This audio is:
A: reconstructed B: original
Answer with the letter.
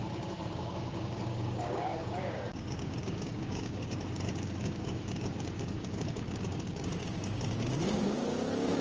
A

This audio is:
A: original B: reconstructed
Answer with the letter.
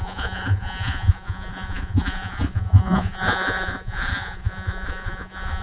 B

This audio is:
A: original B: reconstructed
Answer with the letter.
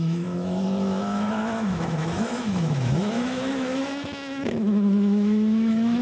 B